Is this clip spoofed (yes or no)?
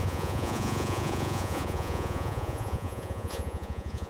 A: yes